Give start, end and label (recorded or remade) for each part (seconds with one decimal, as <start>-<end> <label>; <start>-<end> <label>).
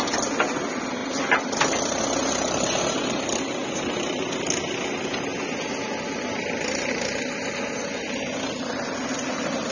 0.0-9.7 recorded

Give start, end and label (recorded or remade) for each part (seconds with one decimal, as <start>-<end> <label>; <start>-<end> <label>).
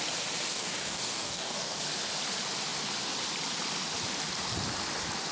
0.0-0.5 recorded; 0.5-1.8 remade; 1.8-5.3 recorded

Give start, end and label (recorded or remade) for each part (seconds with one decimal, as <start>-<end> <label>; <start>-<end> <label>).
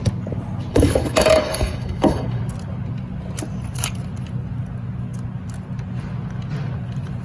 0.0-0.7 recorded; 0.7-2.4 remade; 2.4-7.2 recorded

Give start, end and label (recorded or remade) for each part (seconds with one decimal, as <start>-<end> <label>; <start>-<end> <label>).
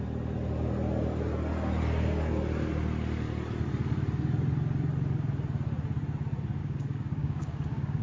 0.0-6.6 recorded; 6.6-8.0 remade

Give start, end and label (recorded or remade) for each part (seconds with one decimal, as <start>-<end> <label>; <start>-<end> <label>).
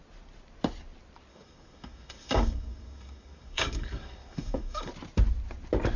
0.0-1.3 recorded; 1.3-4.9 remade; 4.9-6.0 recorded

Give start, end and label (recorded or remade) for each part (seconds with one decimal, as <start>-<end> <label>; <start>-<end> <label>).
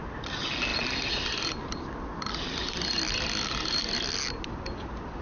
0.0-5.2 recorded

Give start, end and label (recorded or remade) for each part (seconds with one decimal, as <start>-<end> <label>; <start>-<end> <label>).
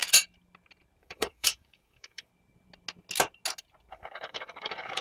0.0-1.0 recorded; 1.0-2.3 remade; 2.3-3.9 recorded; 3.9-5.0 remade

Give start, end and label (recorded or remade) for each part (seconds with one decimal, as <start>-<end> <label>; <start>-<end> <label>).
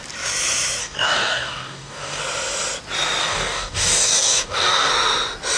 0.0-0.8 recorded; 0.8-2.2 remade; 2.2-3.2 recorded; 3.2-4.9 remade; 4.9-5.6 recorded